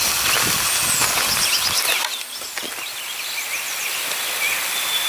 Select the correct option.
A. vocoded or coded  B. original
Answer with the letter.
B